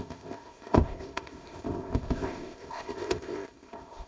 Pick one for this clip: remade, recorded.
remade